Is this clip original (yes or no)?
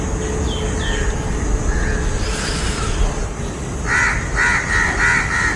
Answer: yes